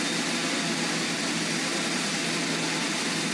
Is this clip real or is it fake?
real